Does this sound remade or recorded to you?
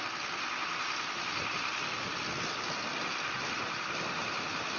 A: recorded